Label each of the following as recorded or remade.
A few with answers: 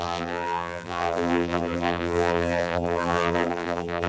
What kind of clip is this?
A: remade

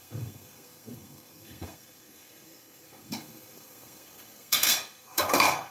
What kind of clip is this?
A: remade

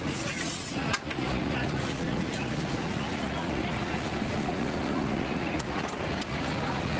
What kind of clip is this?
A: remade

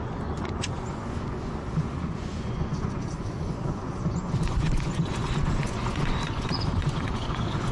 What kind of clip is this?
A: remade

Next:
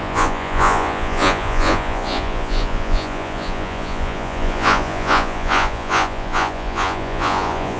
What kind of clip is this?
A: remade